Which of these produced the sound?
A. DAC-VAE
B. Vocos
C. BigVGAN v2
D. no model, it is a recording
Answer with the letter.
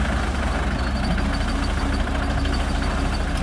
D